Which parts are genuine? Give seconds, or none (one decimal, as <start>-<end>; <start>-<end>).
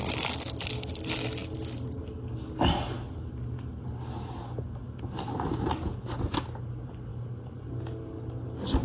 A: 0.0-8.8